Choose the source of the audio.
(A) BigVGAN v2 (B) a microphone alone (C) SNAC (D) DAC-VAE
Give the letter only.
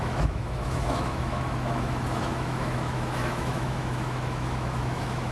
D